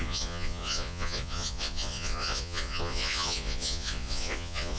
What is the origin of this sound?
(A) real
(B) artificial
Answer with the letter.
B